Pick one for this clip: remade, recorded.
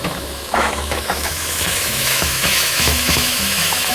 remade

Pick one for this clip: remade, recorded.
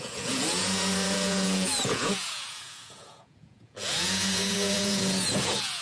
remade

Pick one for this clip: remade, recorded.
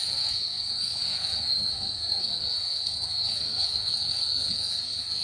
remade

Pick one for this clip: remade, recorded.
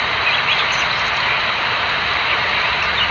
remade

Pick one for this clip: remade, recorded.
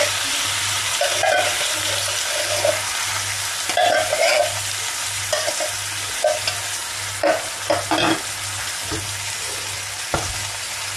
recorded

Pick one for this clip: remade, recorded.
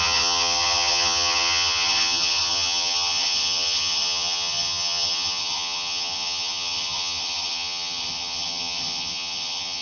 remade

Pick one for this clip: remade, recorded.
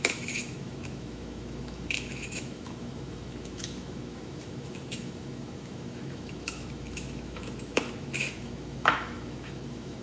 remade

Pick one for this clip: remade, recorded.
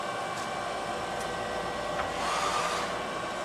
recorded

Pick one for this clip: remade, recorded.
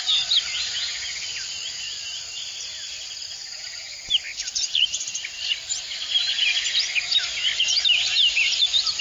remade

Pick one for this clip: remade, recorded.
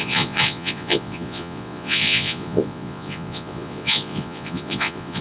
remade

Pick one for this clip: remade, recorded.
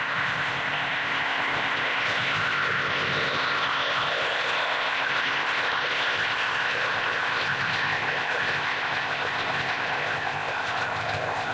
remade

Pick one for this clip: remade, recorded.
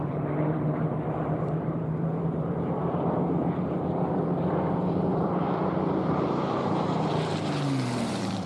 remade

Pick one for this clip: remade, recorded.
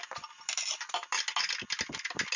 recorded